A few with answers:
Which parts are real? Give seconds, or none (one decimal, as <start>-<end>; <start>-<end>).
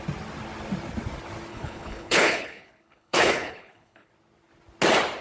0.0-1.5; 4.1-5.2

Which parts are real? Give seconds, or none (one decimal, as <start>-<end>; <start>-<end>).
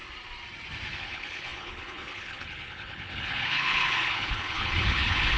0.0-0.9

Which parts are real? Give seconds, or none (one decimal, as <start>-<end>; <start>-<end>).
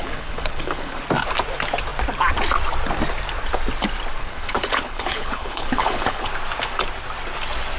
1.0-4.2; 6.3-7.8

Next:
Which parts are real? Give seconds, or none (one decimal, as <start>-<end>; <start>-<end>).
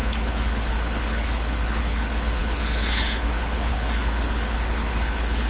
none